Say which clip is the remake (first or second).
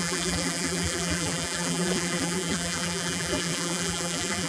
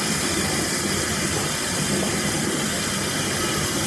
first